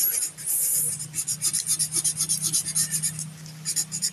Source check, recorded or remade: recorded